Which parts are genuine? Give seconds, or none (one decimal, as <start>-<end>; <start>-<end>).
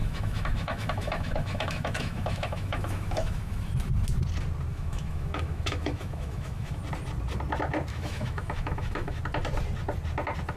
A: 3.7-4.7; 6.8-7.9; 9.2-10.6